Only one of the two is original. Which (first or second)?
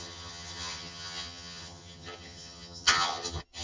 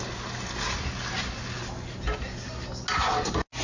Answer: second